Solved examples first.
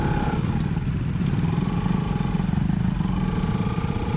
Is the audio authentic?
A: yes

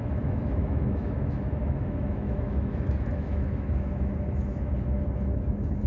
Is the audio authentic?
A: no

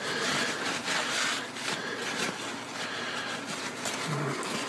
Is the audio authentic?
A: yes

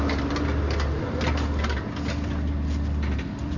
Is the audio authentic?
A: yes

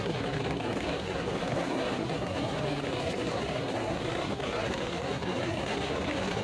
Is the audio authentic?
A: no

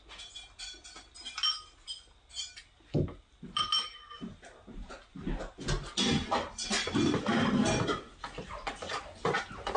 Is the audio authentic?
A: yes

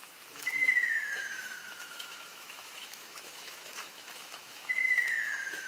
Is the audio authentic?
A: no